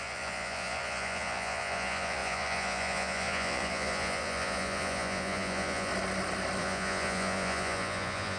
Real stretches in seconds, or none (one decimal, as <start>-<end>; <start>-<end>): 5.9-6.6